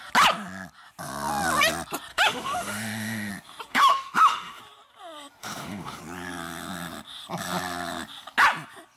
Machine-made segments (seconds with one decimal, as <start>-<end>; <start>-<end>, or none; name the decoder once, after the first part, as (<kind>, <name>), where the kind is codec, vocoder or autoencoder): 2.1-3.3 (autoencoder, DAC-VAE); 3.7-4.6; 5.4-6.0

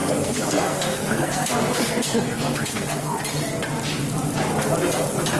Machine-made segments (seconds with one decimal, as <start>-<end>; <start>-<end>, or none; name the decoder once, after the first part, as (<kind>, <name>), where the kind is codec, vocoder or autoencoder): 0.0-3.2 (codec, SNAC)